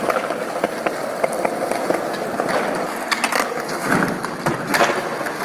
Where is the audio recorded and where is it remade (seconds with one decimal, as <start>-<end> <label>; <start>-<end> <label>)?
0.0-5.4 recorded